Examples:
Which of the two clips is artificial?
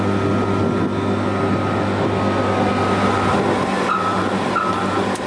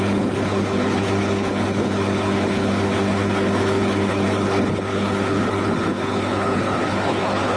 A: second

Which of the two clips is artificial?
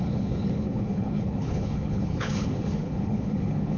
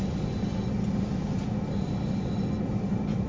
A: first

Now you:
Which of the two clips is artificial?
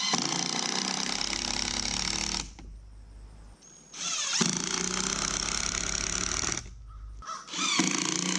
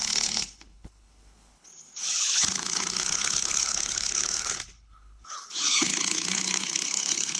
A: second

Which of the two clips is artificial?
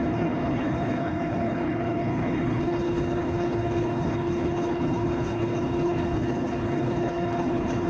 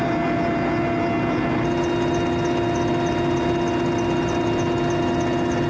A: first